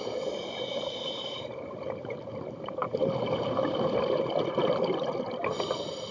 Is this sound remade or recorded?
recorded